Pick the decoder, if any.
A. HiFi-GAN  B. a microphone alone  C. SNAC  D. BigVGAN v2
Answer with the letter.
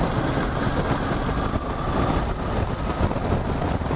B